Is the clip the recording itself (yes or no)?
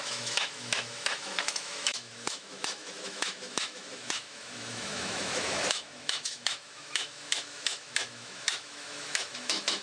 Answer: no